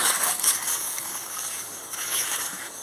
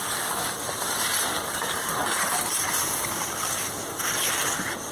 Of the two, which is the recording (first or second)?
second